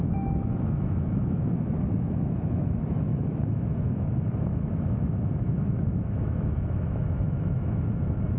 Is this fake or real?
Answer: fake